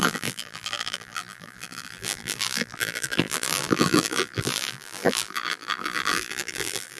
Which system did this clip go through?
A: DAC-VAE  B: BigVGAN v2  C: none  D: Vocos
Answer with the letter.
B